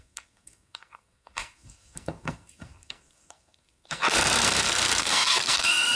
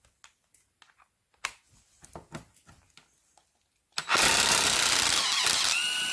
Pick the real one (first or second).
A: second